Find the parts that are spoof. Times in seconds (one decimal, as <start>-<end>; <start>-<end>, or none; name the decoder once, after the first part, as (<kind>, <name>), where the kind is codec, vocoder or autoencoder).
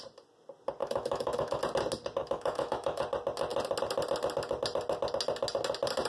0.8-1.6 (autoencoder, DAC-VAE); 2.2-3.0